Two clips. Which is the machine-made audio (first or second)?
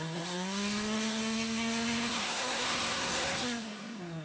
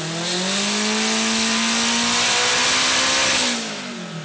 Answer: first